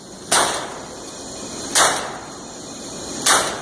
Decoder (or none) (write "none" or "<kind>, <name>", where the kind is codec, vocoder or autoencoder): none